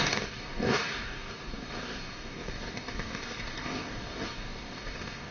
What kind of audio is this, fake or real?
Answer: fake